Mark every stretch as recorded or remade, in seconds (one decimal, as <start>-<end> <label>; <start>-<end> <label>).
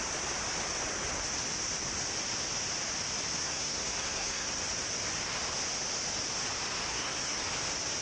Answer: 0.0-3.4 recorded; 3.4-4.5 remade; 4.5-6.9 recorded; 6.9-7.4 remade; 7.4-8.0 recorded